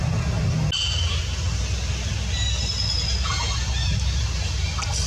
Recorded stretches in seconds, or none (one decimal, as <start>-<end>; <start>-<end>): 0.0-5.1